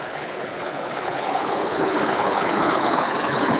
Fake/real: fake